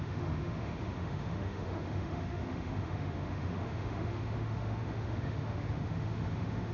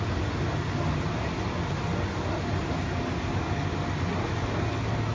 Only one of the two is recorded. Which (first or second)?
second